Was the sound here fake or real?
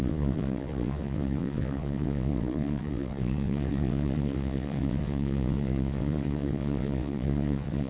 fake